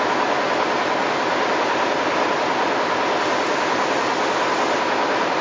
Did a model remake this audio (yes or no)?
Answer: no